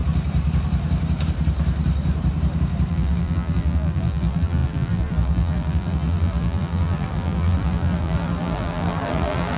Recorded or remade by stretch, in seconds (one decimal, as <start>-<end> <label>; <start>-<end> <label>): 0.0-2.9 recorded; 2.9-9.6 remade